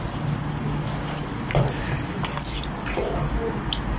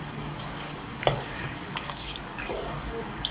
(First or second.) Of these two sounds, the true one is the first